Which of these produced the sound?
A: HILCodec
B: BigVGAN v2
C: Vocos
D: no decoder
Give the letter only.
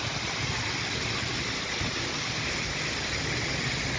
D